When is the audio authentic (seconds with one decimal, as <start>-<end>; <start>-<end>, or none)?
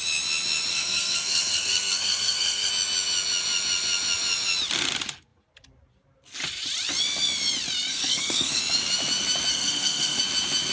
0.0-0.7; 2.7-7.9; 8.6-9.5; 10.2-10.7